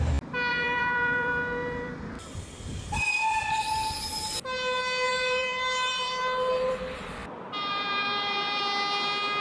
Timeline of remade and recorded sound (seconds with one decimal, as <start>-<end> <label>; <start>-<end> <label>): 0.0-0.5 recorded; 0.5-3.7 remade; 3.7-5.1 recorded; 5.1-8.6 remade; 8.6-9.4 recorded